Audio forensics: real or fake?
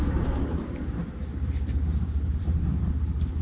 fake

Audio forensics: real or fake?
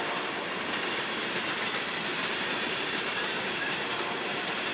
fake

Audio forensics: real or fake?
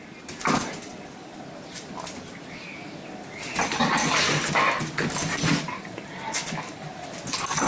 real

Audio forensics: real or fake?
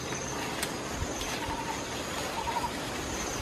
real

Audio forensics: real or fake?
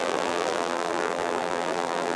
fake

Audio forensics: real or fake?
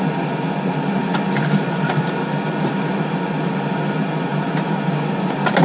real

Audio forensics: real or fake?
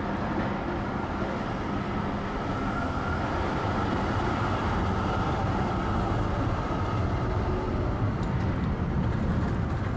real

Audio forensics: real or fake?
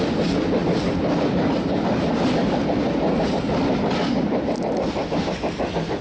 real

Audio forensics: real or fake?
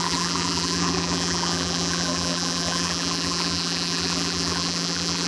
fake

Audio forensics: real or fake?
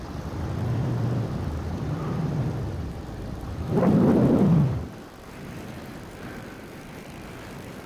fake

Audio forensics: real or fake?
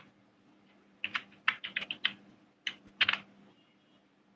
real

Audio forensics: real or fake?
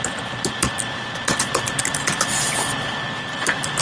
real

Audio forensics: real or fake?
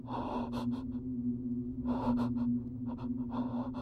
real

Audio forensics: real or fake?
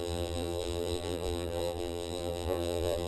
fake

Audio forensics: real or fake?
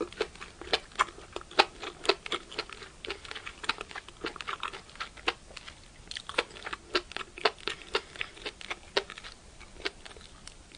real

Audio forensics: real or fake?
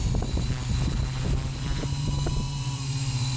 fake